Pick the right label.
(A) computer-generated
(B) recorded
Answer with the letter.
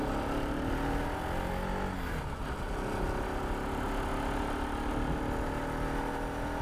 B